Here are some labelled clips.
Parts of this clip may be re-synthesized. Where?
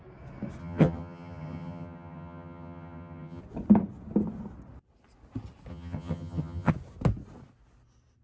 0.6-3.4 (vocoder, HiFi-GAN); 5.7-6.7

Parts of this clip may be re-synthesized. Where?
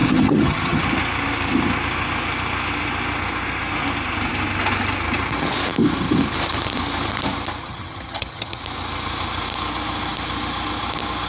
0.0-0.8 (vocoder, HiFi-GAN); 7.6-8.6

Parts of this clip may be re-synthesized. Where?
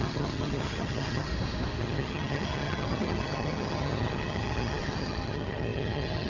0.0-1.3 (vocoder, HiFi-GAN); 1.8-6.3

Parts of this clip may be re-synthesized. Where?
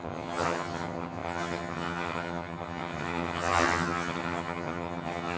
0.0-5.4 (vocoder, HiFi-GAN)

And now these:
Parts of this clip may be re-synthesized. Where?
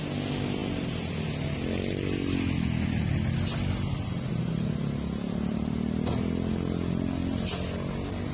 none